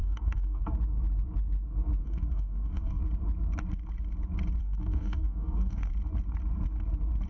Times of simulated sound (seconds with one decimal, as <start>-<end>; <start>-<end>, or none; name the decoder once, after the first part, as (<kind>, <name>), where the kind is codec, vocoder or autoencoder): 0.0-0.6 (codec, DAC); 2.0-3.0; 4.6-5.9